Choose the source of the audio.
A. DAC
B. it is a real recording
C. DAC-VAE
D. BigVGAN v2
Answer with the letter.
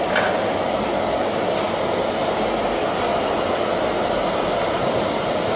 B